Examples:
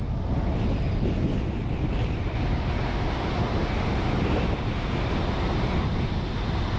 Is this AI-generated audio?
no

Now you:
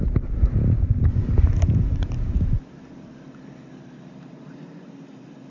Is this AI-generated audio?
yes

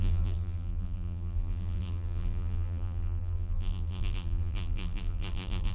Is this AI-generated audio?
yes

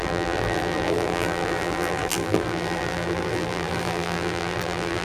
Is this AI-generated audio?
yes